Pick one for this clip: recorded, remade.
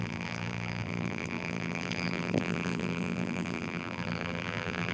remade